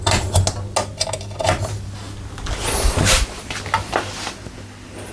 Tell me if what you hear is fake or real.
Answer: real